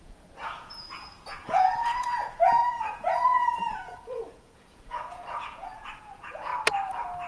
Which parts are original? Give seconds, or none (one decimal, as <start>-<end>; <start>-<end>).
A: 6.5-7.3